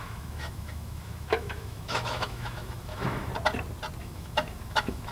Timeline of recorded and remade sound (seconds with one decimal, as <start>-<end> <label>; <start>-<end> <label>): 0.0-3.3 remade; 3.3-4.0 recorded; 4.0-5.1 remade